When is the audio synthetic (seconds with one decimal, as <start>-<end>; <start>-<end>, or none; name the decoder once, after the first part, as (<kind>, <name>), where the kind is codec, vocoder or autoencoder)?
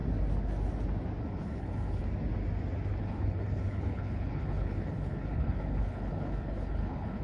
1.2-2.0 (codec, HILCodec); 3.0-7.2